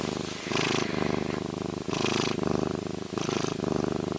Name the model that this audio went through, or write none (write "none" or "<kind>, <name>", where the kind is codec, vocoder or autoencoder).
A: none